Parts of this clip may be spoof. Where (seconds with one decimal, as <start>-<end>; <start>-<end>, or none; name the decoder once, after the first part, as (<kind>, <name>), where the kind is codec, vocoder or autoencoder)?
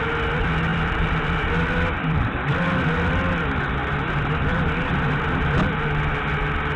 0.7-2.6 (vocoder, BigVGAN v2)